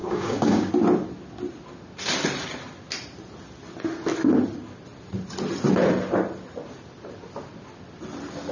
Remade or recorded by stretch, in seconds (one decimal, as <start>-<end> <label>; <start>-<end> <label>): 0.0-0.7 remade; 0.7-8.5 recorded